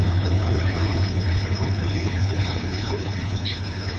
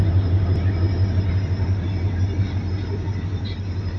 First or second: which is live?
second